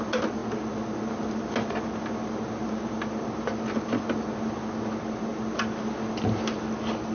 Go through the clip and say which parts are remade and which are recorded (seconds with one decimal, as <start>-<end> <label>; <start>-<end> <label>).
0.0-7.1 recorded